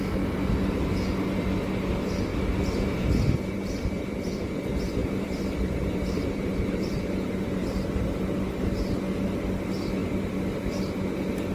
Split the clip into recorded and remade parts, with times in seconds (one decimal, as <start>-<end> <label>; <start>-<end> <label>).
0.0-2.3 recorded; 2.3-4.5 remade; 4.5-5.0 recorded; 5.0-8.2 remade; 8.2-11.5 recorded